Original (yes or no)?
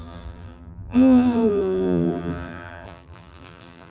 no